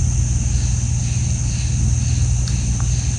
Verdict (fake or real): real